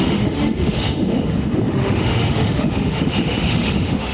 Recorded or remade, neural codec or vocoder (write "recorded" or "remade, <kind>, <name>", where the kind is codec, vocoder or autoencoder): remade, autoencoder, DAC-VAE